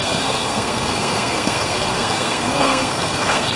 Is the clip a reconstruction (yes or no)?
yes